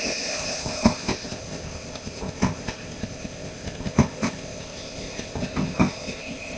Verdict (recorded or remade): remade